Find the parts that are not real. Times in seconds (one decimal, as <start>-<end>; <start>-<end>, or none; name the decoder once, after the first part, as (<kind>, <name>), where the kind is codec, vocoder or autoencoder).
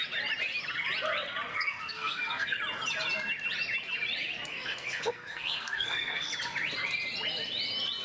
1.5-2.6 (codec, SNAC); 4.5-6.3